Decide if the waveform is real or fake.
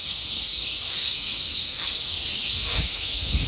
fake